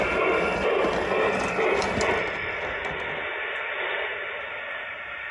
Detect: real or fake real